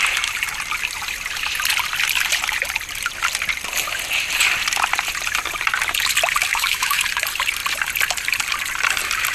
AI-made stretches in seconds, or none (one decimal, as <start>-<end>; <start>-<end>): 6.5-7.0